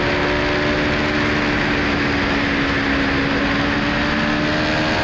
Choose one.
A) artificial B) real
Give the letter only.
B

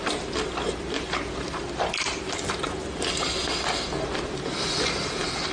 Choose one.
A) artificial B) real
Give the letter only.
B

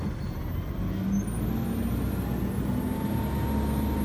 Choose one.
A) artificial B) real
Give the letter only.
B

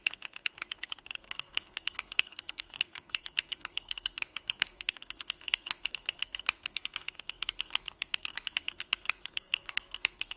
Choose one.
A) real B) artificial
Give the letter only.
B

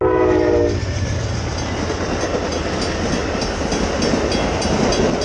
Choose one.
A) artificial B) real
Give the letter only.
B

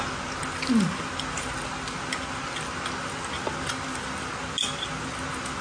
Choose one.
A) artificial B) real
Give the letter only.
B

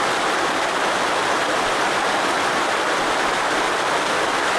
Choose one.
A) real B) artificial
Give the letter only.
A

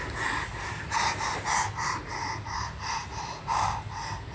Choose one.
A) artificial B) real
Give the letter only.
B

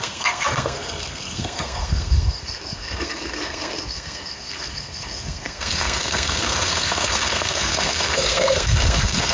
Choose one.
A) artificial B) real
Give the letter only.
A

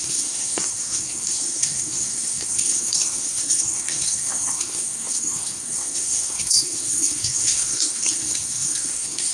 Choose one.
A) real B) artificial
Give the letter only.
B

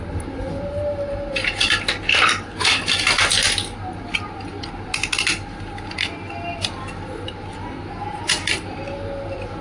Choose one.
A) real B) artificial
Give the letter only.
A